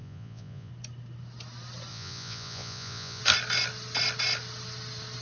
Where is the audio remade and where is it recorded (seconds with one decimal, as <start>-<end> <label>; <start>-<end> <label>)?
0.0-0.7 remade; 0.7-1.9 recorded; 1.9-3.2 remade; 3.2-5.2 recorded